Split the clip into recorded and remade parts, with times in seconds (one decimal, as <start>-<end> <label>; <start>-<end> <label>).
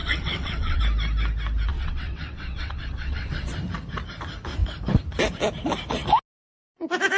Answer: 0.0-0.8 remade; 0.8-1.7 recorded; 1.7-3.6 remade; 3.6-7.2 recorded